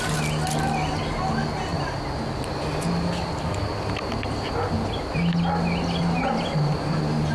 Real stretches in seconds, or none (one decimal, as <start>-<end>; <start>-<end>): 0.0-7.3